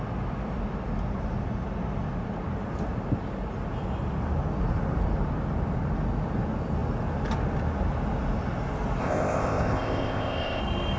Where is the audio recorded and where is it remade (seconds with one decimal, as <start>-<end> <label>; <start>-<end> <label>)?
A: 0.0-9.0 recorded; 9.0-10.6 remade; 10.6-11.0 recorded